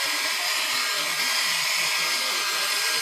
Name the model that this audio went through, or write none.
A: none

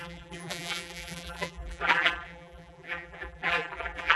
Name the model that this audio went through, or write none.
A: vocoder, BigVGAN v2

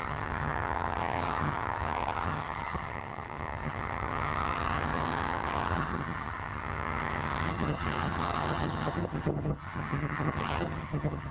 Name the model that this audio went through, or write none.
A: vocoder, HiFi-GAN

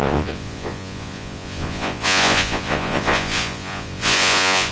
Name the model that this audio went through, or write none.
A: vocoder, Vocos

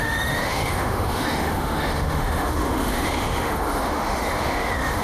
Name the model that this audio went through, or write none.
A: autoencoder, DAC-VAE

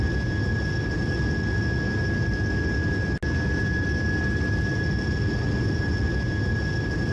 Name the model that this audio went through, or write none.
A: none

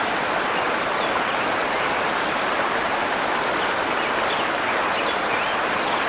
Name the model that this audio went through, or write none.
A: none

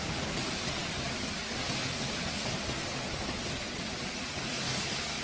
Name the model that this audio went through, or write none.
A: none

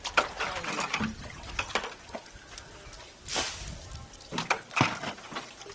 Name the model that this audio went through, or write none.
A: none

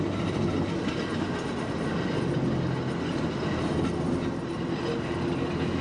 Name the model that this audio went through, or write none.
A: none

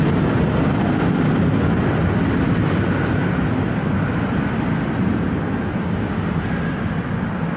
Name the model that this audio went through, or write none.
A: none